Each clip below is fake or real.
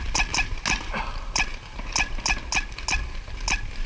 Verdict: real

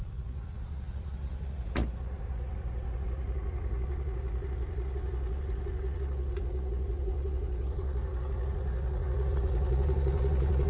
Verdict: fake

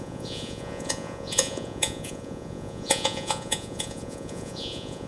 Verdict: fake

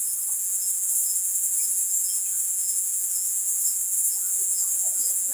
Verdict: fake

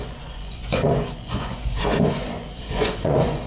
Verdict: fake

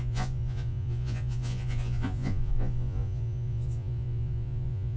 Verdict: fake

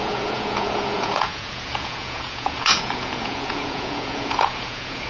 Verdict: fake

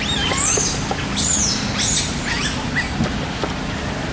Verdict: real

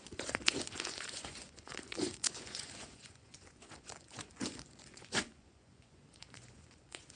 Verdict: fake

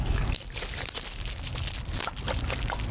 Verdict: real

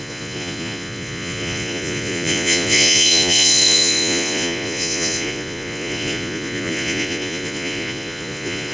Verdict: fake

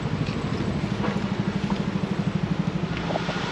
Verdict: real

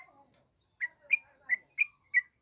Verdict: real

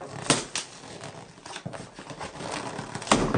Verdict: real